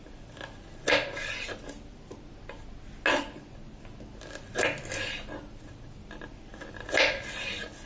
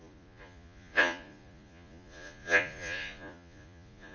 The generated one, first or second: second